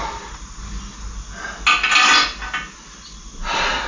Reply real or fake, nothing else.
real